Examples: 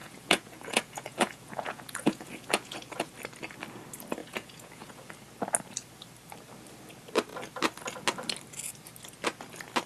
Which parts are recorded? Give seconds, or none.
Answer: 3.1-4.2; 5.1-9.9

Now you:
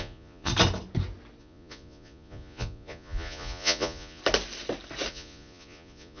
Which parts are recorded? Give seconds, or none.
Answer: 0.5-1.4; 4.2-5.1